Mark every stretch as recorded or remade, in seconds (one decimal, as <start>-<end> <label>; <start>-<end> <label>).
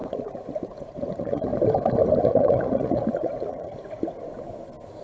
0.0-1.5 remade; 1.5-2.2 recorded; 2.2-4.0 remade; 4.0-5.0 recorded